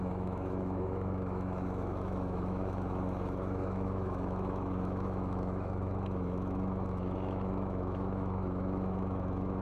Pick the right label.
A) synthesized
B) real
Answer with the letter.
A